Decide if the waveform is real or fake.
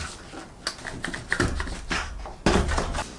real